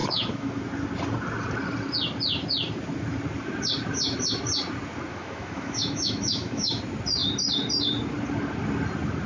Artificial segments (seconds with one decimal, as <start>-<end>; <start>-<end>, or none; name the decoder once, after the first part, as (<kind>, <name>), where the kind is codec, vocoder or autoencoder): 0.0-0.6 (autoencoder, DAC-VAE); 5.1-6.8

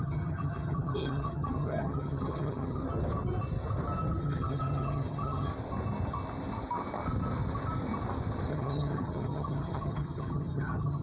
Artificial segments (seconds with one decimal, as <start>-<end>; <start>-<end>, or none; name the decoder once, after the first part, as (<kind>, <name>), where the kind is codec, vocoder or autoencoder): 0.0-2.8 (vocoder, HiFi-GAN); 4.2-5.5; 8.5-11.0

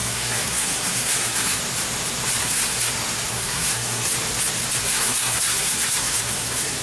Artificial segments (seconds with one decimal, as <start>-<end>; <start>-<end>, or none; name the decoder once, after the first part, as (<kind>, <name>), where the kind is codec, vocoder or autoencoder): 0.0-1.6 (codec, SNAC); 2.4-2.9; 3.3-4.1; 4.8-6.8

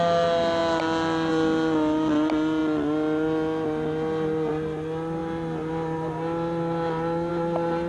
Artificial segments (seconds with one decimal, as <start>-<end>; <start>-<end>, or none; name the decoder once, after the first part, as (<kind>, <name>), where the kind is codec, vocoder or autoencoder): none

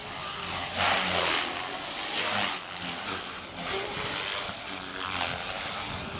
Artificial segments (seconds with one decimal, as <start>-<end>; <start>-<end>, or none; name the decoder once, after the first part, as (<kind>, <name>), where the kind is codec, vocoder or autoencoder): none

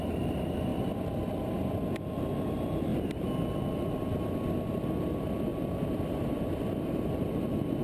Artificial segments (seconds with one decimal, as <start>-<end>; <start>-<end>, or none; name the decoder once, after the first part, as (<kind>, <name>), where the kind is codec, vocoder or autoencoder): 5.5-7.8 (vocoder, BigVGAN v2)

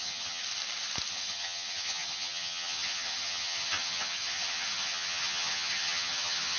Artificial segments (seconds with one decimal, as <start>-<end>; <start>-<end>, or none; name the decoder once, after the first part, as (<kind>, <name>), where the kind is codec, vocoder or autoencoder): 0.0-0.4 (vocoder, HiFi-GAN); 1.1-6.6